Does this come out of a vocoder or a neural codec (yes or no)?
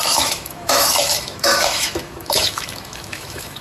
yes